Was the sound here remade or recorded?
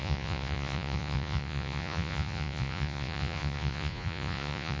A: remade